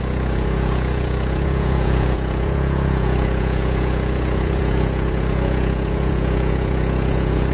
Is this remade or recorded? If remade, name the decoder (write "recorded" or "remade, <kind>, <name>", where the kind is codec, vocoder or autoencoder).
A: remade, vocoder, Vocos